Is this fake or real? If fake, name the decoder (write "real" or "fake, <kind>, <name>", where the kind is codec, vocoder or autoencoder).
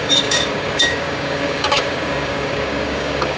fake, codec, DAC